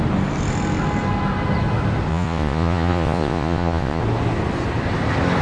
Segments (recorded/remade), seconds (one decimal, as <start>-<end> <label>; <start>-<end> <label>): 0.0-2.1 recorded; 2.1-4.0 remade; 4.0-5.4 recorded